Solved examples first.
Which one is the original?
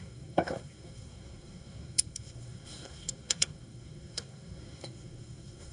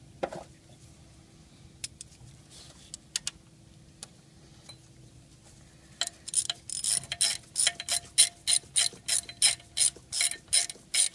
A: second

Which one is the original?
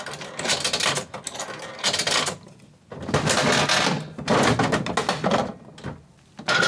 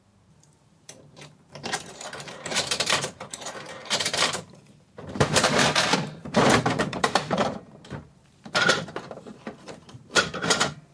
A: first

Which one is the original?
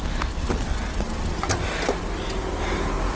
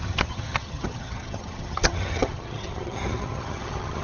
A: first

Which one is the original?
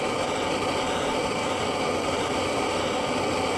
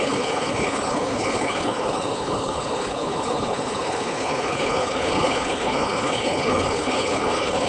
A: first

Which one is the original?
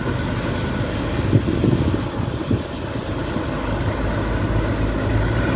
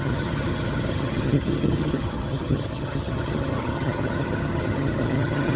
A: first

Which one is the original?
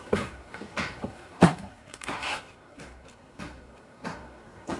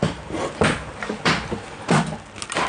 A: second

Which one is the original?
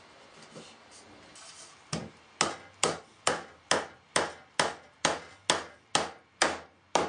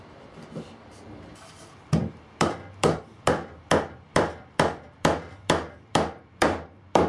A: first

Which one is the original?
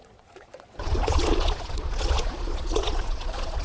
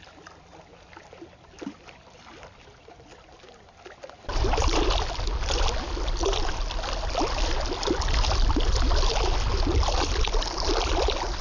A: second